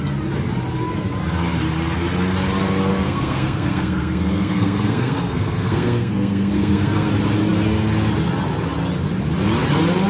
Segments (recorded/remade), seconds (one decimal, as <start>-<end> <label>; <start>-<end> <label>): 0.0-2.9 recorded; 2.9-7.1 remade; 7.1-10.1 recorded